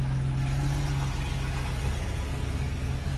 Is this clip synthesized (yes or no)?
no